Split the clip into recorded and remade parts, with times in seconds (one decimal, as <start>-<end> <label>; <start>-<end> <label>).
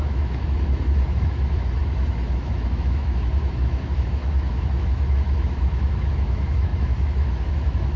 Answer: 0.0-8.0 remade